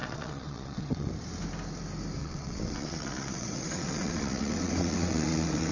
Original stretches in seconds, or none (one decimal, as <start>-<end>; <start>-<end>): 1.1-2.2